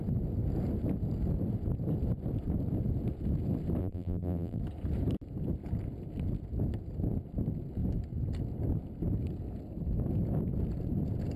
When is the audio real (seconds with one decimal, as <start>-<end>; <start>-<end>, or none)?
0.0-3.8; 4.6-11.4